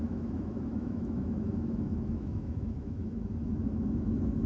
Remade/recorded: remade